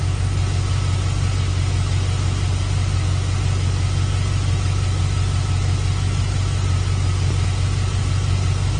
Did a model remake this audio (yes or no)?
no